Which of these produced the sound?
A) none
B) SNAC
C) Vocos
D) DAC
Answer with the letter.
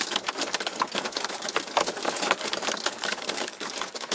D